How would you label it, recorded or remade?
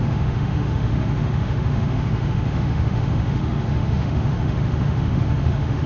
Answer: remade